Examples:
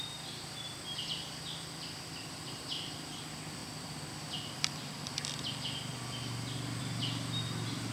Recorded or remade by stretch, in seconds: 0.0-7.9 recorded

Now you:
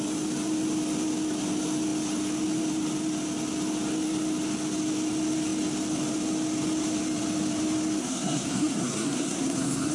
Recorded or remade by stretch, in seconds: 0.0-8.0 recorded; 8.0-9.9 remade

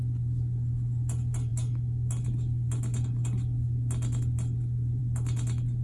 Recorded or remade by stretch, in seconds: 0.0-5.8 recorded

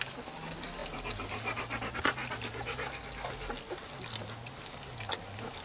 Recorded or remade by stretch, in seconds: 0.0-5.6 recorded